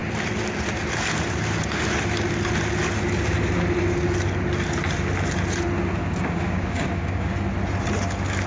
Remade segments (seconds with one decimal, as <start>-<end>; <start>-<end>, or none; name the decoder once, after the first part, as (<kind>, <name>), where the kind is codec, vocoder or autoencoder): 6.0-7.3 (codec, DAC)